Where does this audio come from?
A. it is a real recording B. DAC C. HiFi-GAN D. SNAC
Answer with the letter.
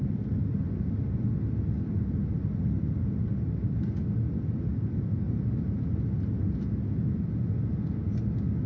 A